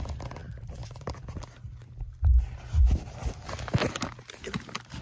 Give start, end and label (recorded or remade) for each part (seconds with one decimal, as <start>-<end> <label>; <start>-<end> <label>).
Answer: 0.0-0.4 recorded; 0.4-1.4 remade; 1.4-5.0 recorded